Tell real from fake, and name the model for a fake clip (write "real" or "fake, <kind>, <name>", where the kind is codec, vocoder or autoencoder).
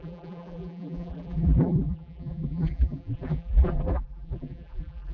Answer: fake, vocoder, BigVGAN v2